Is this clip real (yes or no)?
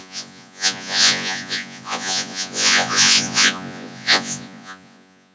no